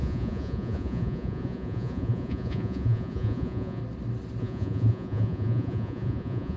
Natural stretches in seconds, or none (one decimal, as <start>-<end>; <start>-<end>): 3.8-4.4